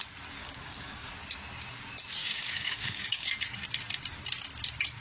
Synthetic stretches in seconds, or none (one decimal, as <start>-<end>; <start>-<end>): 0.4-1.1; 2.2-3.3